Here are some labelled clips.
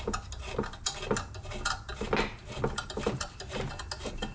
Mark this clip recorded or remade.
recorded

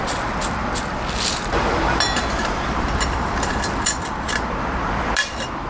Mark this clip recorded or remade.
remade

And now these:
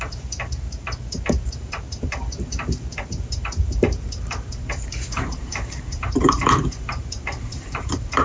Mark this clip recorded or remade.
remade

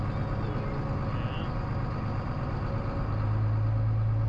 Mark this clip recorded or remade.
recorded